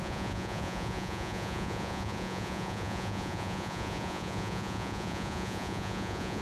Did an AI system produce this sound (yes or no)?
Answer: yes